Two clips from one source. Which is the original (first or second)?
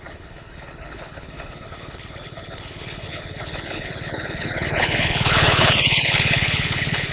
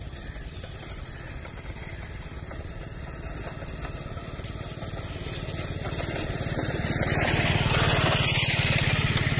second